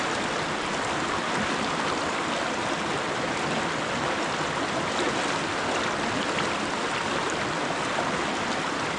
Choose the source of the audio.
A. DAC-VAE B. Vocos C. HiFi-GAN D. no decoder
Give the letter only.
D